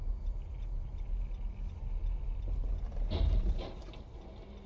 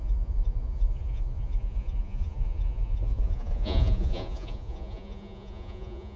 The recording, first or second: first